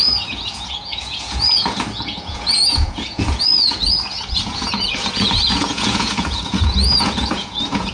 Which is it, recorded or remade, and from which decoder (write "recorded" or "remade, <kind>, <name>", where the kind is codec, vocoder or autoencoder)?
remade, vocoder, Vocos